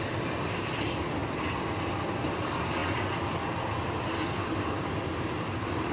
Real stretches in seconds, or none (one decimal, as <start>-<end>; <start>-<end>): 0.0-5.9